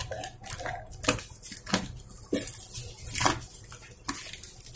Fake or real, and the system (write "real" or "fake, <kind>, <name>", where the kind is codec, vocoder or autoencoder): real